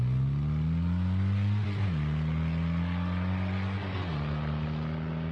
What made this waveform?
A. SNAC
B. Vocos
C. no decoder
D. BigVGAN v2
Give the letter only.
C